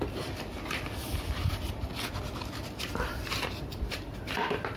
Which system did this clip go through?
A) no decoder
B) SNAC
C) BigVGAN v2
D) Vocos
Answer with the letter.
C